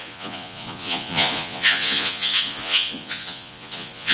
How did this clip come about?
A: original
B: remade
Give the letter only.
B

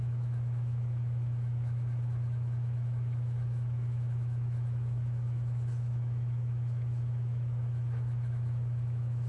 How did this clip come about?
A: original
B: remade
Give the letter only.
B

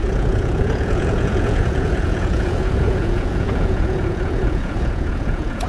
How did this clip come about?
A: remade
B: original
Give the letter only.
A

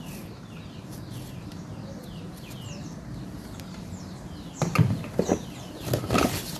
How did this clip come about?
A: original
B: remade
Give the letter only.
A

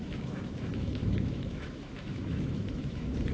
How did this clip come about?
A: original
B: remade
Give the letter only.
B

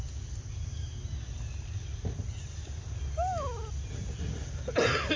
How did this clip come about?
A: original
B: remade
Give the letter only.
A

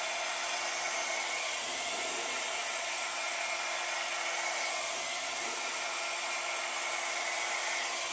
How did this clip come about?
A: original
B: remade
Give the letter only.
A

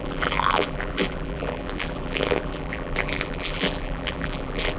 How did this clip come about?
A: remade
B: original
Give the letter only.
A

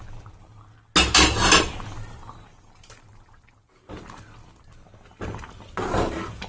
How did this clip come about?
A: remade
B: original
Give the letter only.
B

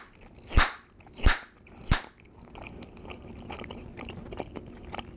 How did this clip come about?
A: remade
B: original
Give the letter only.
B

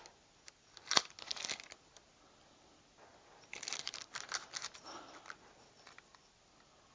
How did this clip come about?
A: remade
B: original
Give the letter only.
B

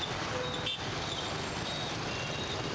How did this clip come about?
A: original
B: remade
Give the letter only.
A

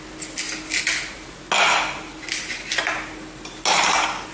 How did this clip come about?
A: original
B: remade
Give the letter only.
A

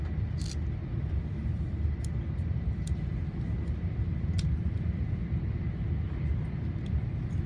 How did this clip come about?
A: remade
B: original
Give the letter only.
B